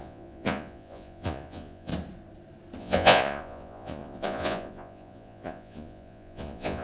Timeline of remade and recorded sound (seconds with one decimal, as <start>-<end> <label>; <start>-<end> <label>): 0.0-1.9 remade; 1.9-2.8 recorded; 2.8-6.8 remade